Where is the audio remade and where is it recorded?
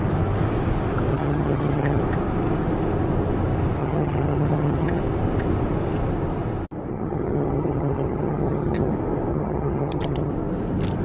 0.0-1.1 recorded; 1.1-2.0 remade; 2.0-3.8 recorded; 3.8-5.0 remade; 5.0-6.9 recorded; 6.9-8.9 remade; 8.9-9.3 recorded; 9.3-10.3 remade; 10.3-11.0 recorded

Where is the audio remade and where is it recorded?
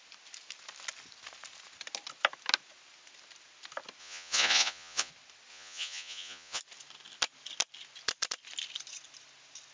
0.0-4.0 recorded; 4.0-5.1 remade; 5.1-5.5 recorded; 5.5-6.6 remade; 6.6-9.7 recorded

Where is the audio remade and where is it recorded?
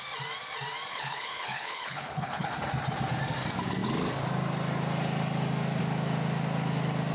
0.0-0.9 recorded; 0.9-2.5 remade; 2.5-7.1 recorded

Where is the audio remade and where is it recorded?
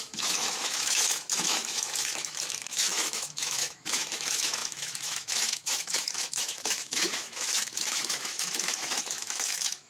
0.0-9.9 remade